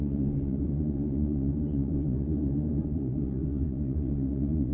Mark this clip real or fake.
fake